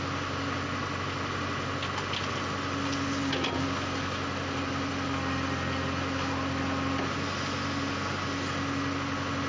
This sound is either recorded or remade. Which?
recorded